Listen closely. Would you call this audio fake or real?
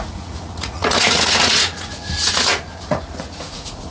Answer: fake